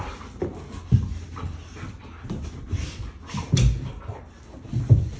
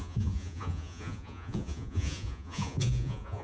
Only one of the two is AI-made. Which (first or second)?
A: second